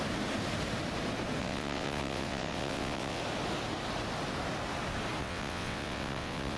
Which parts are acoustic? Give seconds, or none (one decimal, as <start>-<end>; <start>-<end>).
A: 0.0-1.4; 3.2-5.2